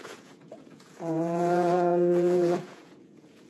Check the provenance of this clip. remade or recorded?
remade